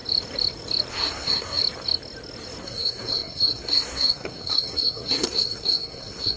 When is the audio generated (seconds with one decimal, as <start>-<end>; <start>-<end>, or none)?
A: 0.9-1.6; 2.6-6.4

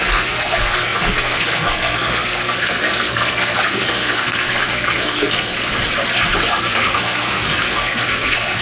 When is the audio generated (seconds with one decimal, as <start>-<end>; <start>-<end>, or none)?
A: 0.0-5.5; 6.5-8.6

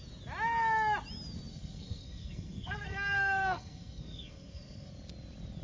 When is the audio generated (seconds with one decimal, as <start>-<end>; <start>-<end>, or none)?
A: 1.5-4.9

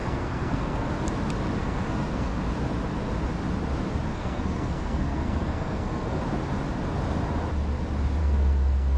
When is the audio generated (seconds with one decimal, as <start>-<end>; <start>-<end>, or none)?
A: 0.0-0.9; 1.6-2.4; 4.1-6.2; 8.2-9.0

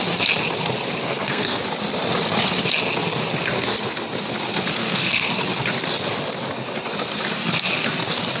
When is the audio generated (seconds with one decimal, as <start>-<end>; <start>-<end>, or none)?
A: 1.0-1.6; 4.8-5.3

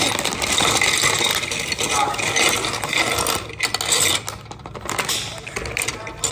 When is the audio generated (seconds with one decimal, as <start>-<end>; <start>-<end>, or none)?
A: none

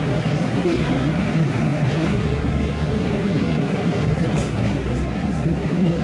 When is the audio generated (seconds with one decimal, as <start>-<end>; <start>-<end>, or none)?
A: 0.0-6.0